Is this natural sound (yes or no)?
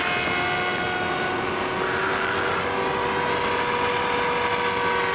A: yes